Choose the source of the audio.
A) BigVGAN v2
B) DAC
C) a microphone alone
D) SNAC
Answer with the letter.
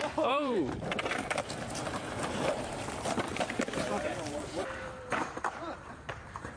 A